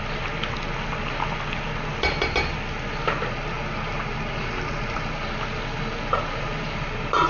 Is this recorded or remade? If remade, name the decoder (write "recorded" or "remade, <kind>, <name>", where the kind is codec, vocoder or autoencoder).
recorded